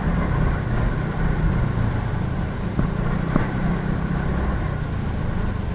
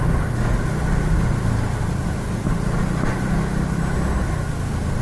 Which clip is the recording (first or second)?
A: second